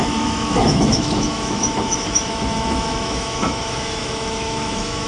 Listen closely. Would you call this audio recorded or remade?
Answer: remade